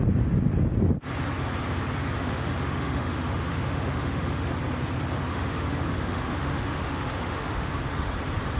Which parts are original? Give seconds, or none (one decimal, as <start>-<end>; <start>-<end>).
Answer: 0.0-2.2; 4.5-5.3; 8.1-8.6